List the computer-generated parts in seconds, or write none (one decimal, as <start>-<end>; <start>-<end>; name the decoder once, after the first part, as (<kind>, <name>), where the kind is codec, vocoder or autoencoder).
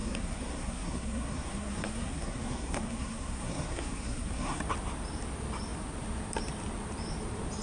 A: 0.0-4.6 (codec, SNAC)